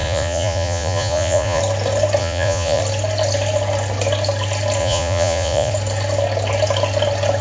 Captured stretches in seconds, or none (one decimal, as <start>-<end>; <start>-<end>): 1.6-2.2; 2.8-4.8; 5.7-7.4